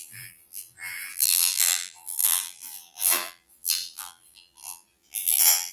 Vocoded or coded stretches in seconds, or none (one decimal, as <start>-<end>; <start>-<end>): 0.0-5.7

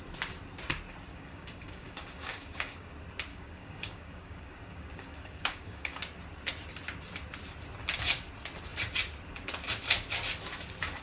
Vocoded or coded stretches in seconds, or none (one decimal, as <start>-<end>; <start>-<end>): 1.1-2.9; 3.3-6.0

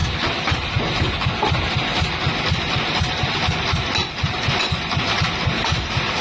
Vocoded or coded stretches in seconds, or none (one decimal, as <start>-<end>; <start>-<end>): none